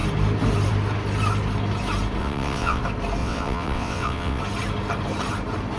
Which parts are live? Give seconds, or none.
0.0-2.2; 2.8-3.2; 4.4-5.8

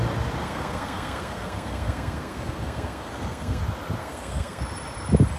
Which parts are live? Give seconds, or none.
0.0-0.4; 3.6-4.0; 4.6-5.4

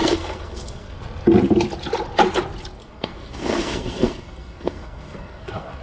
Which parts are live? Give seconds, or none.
1.0-2.8